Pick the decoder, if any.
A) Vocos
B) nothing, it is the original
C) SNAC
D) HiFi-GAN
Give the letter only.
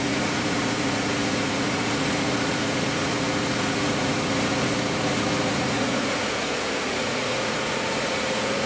A